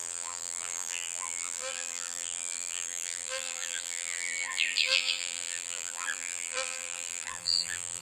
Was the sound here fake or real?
fake